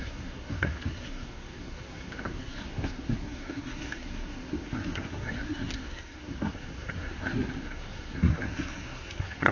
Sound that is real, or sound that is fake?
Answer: fake